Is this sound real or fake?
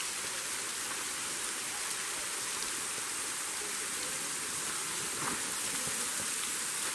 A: fake